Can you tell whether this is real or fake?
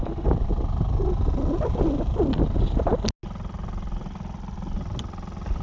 real